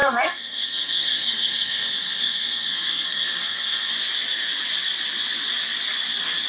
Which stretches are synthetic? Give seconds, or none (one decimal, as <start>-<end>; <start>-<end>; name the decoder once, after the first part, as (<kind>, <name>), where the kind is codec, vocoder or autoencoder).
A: 0.0-3.9 (codec, SNAC)